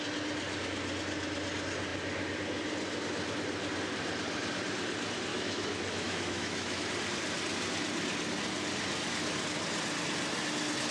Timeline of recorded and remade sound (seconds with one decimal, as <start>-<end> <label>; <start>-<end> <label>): 0.0-5.3 recorded; 5.3-6.9 remade; 6.9-10.9 recorded